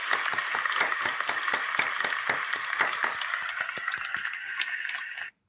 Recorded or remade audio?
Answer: recorded